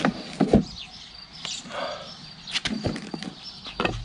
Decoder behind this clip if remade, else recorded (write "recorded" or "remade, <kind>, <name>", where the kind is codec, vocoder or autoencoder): recorded